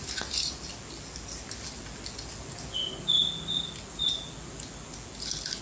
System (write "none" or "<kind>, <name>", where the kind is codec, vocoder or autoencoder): none